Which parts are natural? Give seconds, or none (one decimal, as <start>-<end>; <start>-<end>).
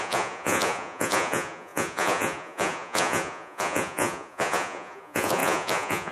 none